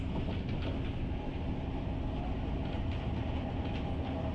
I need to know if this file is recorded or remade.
recorded